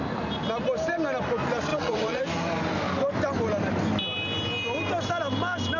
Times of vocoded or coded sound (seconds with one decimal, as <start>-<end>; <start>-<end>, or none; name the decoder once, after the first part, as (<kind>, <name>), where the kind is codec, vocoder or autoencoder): 1.7-2.2 (vocoder, WaveNeXt)